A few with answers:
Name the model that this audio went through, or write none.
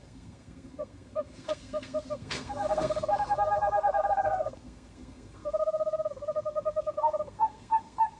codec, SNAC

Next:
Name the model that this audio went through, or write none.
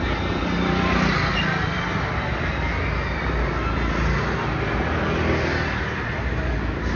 none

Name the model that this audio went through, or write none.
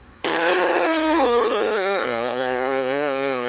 codec, SNAC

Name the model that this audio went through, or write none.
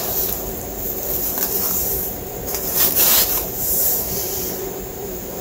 vocoder, BigVGAN v2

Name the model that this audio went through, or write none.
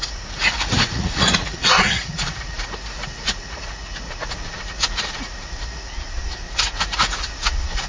vocoder, Vocos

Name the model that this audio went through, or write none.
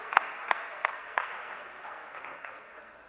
codec, SNAC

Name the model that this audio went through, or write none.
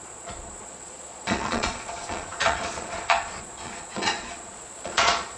vocoder, Vocos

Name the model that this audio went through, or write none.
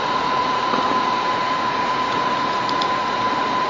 vocoder, Vocos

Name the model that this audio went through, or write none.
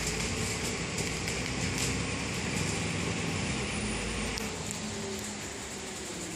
none